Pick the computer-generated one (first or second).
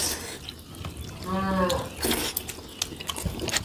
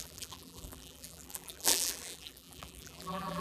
second